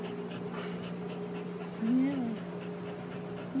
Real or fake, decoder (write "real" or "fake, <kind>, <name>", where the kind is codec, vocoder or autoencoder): real